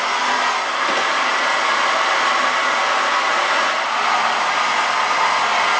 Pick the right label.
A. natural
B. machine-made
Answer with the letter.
A